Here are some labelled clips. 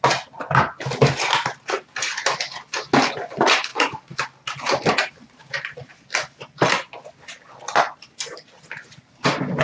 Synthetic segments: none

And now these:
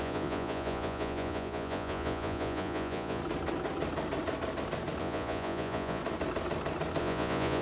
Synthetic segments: 0.0-3.2 (vocoder, Vocos); 5.0-6.0; 7.0-7.6

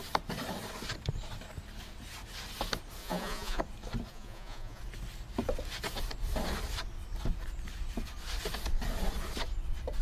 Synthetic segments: 3.0-3.6 (vocoder, Vocos); 4.1-4.8

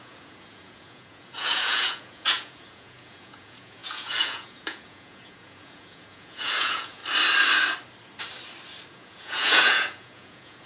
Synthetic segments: 0.0-7.0 (vocoder, Vocos); 8.9-10.7

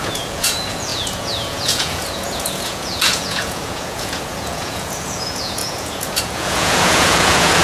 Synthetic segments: 0.0-7.6 (vocoder, Vocos)

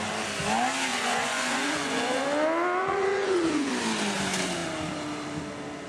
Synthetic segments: 0.9-2.2 (vocoder, Vocos); 2.8-3.7